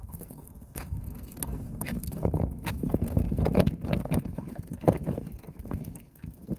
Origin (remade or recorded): remade